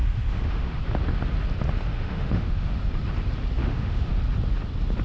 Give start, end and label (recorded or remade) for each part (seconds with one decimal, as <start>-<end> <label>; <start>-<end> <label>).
0.0-0.8 remade; 0.8-1.9 recorded; 1.9-2.8 remade; 2.8-3.6 recorded; 3.6-4.2 remade; 4.2-5.0 recorded